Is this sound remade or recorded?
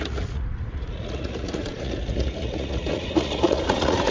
remade